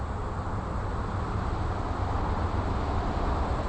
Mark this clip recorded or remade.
recorded